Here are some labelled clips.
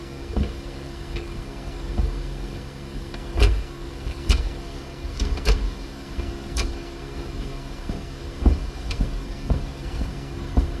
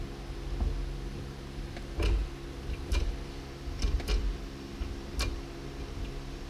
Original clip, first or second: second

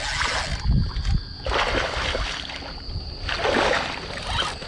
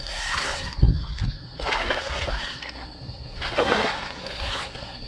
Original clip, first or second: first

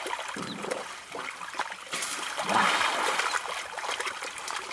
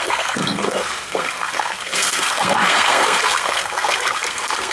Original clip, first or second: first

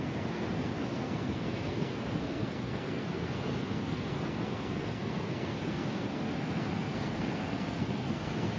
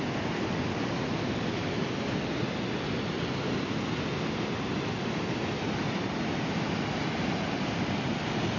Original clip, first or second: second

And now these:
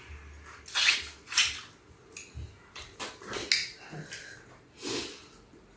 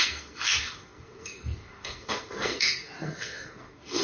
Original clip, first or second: first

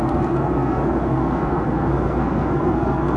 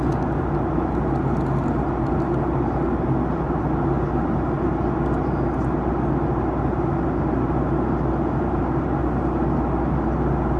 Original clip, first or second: second